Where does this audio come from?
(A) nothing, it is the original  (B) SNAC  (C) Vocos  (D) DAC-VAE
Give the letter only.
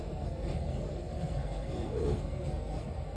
B